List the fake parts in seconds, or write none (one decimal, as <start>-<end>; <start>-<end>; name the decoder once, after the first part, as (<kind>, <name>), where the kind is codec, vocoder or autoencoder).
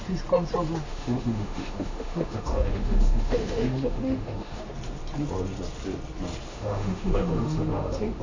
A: 0.9-4.6 (autoencoder, DAC-VAE); 6.5-8.2